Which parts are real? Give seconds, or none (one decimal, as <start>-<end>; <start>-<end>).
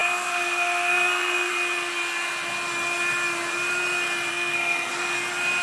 1.5-4.3; 4.9-5.6